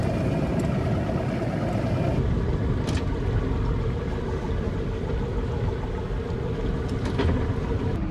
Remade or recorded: recorded